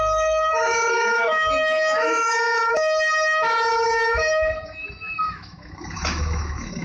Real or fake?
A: fake